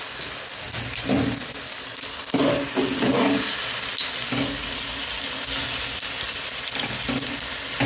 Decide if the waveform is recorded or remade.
recorded